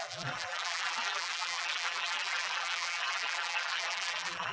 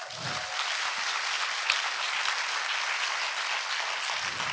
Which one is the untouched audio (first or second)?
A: second